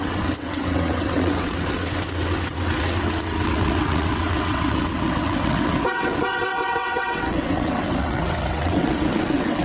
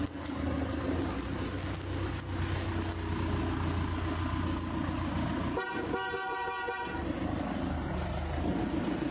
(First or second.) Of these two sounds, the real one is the second